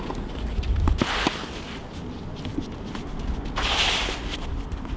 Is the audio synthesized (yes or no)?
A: no